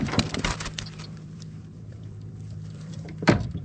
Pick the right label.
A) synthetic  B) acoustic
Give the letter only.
A